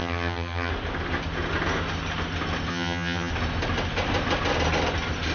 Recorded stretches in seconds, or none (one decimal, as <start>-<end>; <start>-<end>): 0.7-2.7; 3.3-5.3